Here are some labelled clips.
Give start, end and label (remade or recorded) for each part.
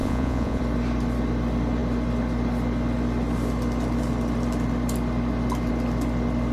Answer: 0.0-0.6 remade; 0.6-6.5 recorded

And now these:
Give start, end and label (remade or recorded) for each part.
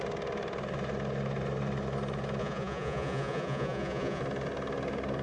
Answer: 0.0-2.4 recorded; 2.4-4.2 remade; 4.2-5.2 recorded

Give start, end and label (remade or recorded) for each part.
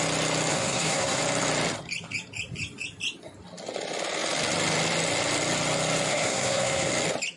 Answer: 0.0-0.5 recorded; 0.5-1.2 remade; 1.2-6.1 recorded; 6.1-6.9 remade; 6.9-7.4 recorded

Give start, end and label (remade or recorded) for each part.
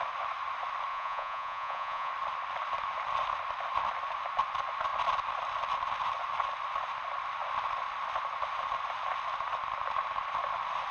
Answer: 0.0-0.9 recorded; 0.9-2.1 remade; 2.1-10.9 recorded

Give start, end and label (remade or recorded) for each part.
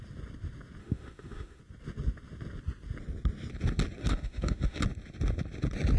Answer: 0.0-0.8 recorded; 0.8-1.6 remade; 1.6-4.0 recorded; 4.0-4.8 remade; 4.8-6.0 recorded